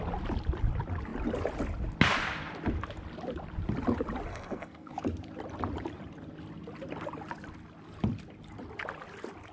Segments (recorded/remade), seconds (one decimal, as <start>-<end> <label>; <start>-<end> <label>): 0.0-4.3 recorded; 4.3-4.9 remade; 4.9-9.5 recorded